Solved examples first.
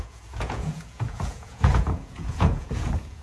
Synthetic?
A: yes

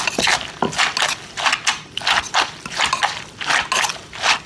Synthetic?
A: no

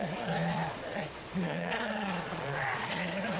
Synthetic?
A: yes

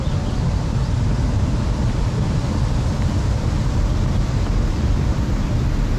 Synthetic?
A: no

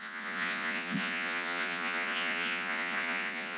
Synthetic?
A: yes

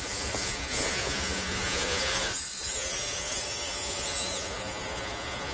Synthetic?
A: yes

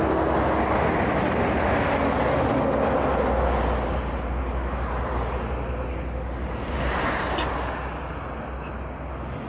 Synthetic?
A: no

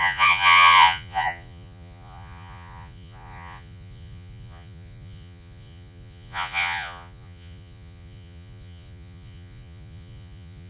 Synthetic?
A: yes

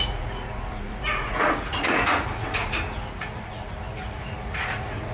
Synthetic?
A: yes